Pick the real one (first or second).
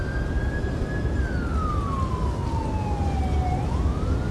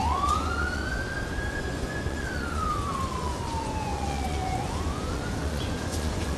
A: first